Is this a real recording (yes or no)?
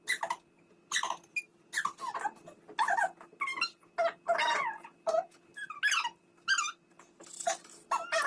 yes